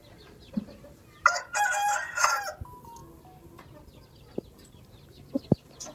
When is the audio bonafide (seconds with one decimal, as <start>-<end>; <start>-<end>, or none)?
0.0-5.9